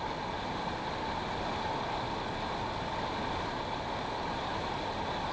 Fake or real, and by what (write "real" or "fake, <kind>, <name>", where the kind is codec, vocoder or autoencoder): real